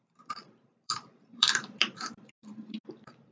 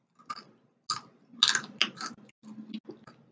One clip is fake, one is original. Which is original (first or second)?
second